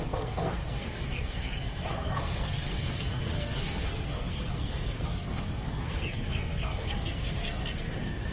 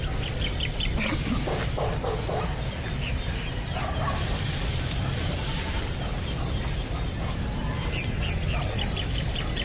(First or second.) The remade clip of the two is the first